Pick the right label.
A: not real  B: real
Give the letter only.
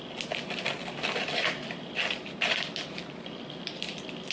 B